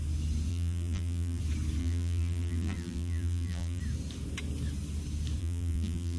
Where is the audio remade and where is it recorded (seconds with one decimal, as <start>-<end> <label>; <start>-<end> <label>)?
0.0-0.5 recorded; 0.5-1.4 remade; 1.4-1.8 recorded; 1.8-3.8 remade; 3.8-5.4 recorded; 5.4-6.2 remade